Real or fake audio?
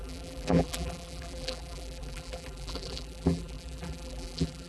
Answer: fake